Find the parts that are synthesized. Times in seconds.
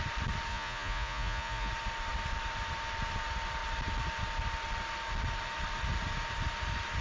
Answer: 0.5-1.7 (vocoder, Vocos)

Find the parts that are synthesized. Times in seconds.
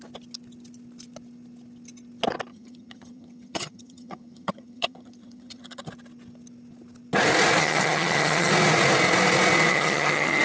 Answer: 2.5-5.9 (vocoder, HiFi-GAN); 7.6-8.5; 9.7-10.4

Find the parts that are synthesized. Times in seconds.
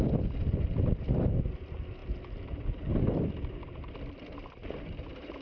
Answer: none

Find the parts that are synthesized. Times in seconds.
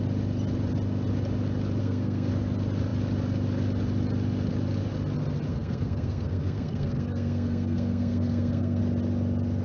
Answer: 1.8-2.3 (codec, SNAC); 5.5-8.8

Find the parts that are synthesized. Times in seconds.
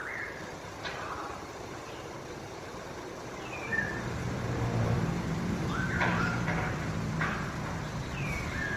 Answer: 0.8-8.8 (vocoder, BigVGAN v2)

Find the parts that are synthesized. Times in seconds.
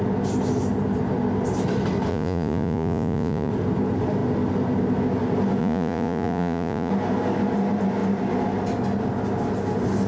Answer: 2.1-3.5 (vocoder, Vocos); 5.6-6.9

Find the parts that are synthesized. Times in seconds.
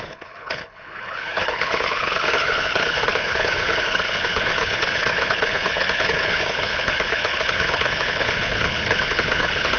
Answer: 0.0-9.8 (codec, HILCodec)